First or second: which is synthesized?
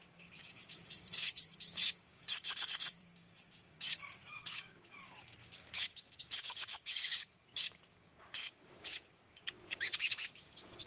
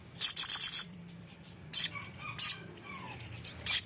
first